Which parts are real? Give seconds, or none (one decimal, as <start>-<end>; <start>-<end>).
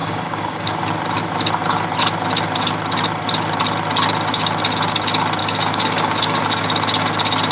0.8-5.4; 6.4-7.5